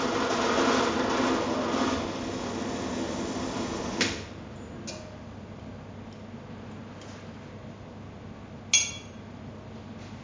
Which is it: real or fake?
real